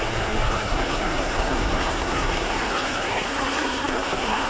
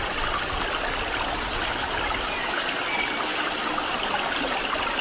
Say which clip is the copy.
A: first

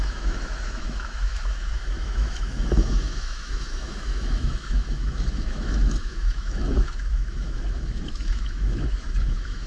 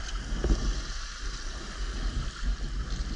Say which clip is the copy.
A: first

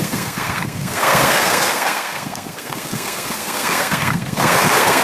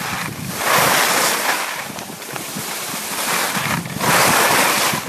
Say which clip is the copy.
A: first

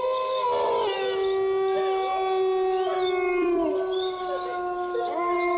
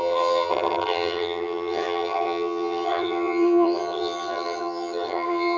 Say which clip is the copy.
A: second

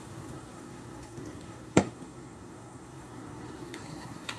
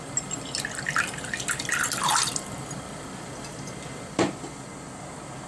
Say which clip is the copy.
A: first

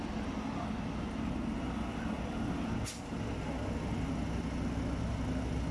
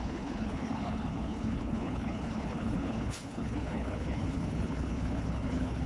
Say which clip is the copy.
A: second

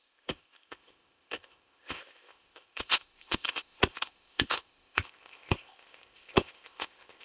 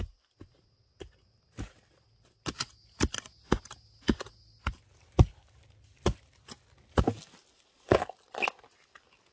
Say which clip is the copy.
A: first